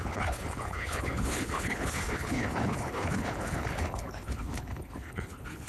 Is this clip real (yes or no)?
no